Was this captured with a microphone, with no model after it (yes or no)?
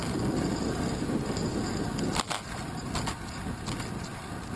yes